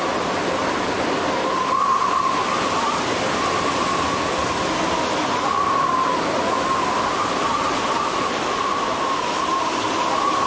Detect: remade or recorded recorded